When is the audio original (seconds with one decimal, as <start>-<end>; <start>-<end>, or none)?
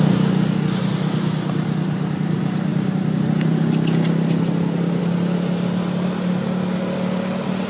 0.0-7.7